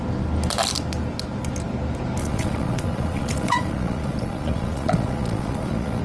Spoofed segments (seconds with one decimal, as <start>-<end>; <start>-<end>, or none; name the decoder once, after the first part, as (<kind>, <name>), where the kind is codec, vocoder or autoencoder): 2.2-6.0 (vocoder, Vocos)